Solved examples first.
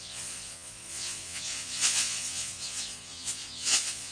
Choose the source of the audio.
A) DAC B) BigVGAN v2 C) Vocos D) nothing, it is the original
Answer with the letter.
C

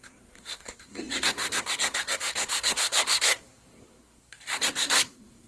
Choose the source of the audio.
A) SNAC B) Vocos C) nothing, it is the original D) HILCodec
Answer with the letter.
A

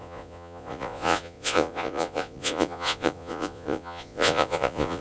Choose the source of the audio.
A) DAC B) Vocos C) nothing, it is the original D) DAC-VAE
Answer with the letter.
B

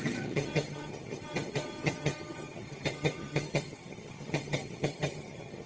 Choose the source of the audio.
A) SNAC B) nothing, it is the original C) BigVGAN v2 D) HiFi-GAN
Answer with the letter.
D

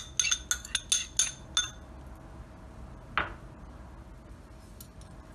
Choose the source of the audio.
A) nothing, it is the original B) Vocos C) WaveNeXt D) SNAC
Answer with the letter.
A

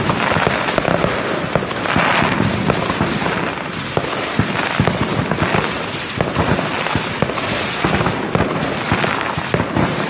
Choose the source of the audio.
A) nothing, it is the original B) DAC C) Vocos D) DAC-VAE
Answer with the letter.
A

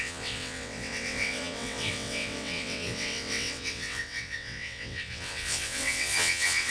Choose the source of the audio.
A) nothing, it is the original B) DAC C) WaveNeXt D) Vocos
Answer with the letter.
C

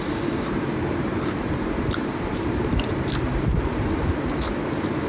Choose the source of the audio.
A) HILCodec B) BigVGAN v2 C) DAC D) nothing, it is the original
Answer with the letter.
B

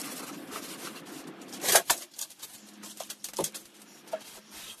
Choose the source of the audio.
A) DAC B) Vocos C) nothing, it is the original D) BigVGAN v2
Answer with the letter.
C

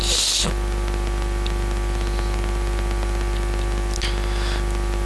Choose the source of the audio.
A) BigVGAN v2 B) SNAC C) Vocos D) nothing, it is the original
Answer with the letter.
D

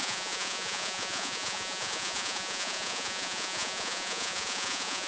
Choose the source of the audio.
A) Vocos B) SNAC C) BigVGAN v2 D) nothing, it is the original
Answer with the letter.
A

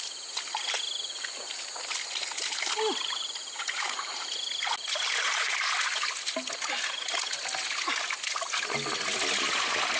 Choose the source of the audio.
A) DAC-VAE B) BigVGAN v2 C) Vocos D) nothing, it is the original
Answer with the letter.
D